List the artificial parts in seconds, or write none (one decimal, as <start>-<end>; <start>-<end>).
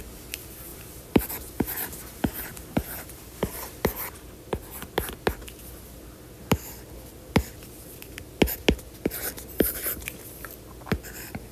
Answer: 0.7-1.5; 2.5-3.7